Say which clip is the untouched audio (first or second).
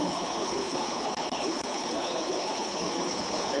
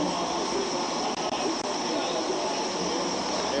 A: second